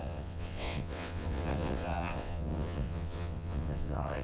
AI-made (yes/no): yes